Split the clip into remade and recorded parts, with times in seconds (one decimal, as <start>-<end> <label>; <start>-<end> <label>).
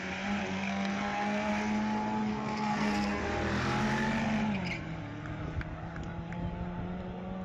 0.0-0.4 recorded; 0.4-1.5 remade; 1.5-2.3 recorded; 2.3-3.2 remade; 3.2-7.4 recorded